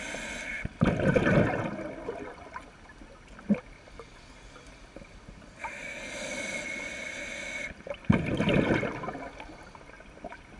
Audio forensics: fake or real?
real